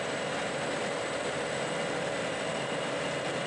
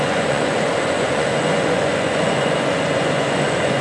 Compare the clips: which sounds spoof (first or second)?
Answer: second